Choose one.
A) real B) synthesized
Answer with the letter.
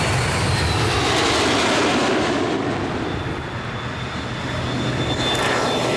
A